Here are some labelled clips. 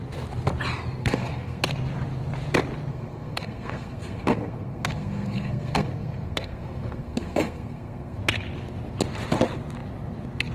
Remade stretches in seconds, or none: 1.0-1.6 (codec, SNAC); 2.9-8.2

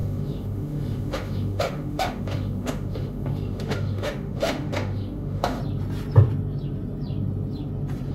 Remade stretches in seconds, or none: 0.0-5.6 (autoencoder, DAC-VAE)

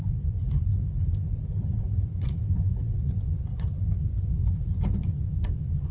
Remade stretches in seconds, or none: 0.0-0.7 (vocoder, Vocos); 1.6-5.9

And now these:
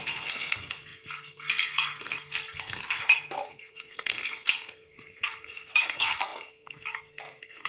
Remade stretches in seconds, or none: 0.0-7.7 (codec, SNAC)

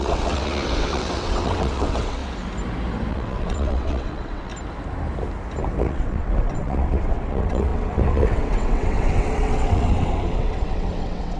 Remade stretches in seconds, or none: 0.0-2.2 (vocoder, WaveNeXt); 3.1-4.5; 5.8-11.4

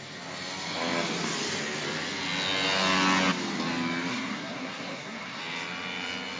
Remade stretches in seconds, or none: 4.1-5.4 (codec, SNAC)

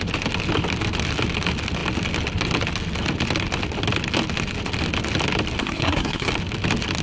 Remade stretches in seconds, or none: 5.6-6.3 (codec, SNAC)

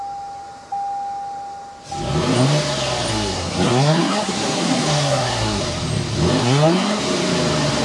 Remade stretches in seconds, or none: 3.1-5.6 (codec, SNAC); 6.4-7.0